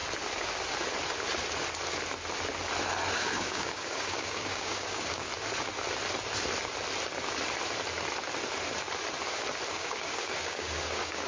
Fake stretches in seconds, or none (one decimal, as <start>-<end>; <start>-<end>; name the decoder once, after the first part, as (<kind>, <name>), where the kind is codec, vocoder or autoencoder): 3.1-5.3 (codec, DAC); 9.7-11.3